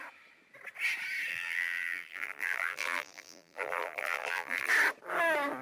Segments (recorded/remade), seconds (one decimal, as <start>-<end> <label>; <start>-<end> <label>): 0.0-1.3 recorded; 1.3-4.7 remade; 4.7-5.6 recorded